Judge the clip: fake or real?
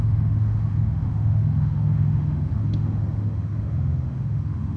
fake